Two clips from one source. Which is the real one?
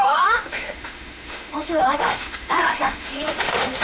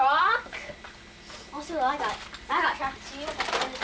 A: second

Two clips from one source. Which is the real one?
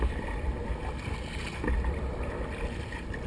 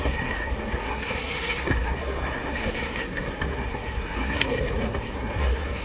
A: first